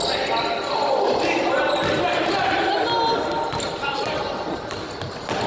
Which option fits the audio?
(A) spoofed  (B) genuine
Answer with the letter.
B